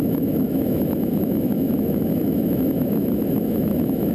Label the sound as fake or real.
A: fake